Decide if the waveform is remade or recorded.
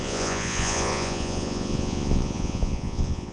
remade